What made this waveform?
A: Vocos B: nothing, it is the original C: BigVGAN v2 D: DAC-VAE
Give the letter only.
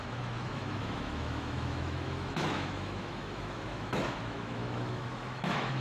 D